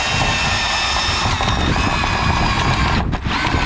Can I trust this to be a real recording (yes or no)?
yes